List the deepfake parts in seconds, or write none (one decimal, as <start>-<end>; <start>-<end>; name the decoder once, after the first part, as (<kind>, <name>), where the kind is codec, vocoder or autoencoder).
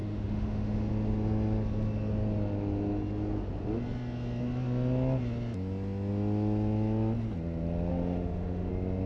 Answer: 0.0-0.9 (autoencoder, DAC-VAE); 7.9-8.7